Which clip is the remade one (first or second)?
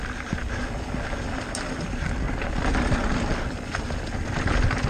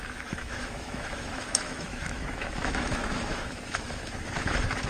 second